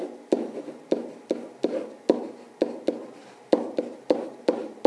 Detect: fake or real real